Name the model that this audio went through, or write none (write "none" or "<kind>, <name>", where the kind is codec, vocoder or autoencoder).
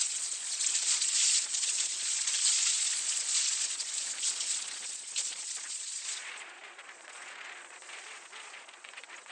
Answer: vocoder, Vocos